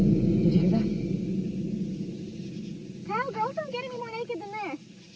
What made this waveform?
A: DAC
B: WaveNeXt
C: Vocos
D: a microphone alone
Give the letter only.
D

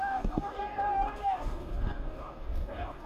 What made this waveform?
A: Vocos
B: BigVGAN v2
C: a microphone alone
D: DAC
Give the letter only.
D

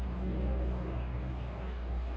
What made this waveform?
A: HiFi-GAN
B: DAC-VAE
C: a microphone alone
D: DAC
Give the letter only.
D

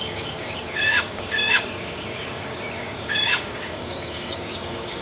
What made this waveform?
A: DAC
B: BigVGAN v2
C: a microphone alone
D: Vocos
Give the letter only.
A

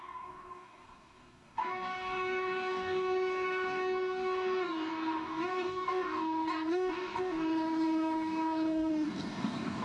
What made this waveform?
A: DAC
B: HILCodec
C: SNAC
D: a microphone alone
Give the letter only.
A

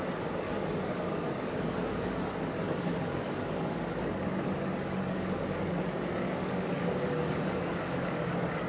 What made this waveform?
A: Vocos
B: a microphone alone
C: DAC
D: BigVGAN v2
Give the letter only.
C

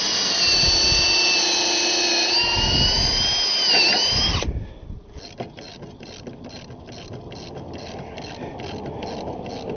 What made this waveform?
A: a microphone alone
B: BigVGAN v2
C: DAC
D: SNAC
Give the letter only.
A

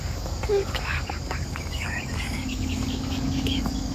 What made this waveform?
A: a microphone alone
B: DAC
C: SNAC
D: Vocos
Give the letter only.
B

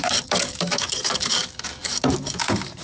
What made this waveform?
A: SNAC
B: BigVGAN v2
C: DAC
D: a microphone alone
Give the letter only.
C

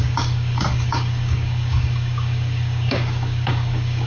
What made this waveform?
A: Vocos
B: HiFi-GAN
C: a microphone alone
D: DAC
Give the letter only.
D